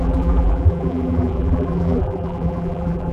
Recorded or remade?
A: remade